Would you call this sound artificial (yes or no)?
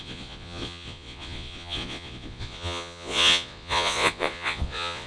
yes